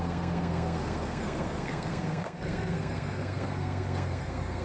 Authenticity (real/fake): fake